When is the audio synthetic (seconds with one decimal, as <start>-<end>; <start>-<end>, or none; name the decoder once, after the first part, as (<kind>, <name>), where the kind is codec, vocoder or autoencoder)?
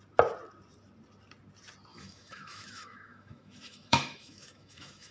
1.9-5.1 (autoencoder, DAC-VAE)